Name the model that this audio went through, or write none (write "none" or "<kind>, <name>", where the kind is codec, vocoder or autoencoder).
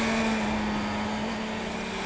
none